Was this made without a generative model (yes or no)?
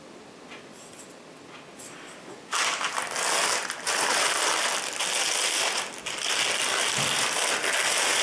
yes